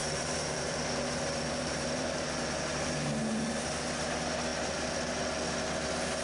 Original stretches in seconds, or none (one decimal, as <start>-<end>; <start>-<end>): 3.7-6.2